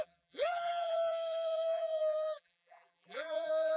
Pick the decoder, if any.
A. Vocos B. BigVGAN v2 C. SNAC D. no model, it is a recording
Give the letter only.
B